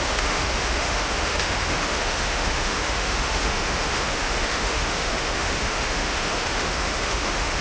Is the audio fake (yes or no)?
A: yes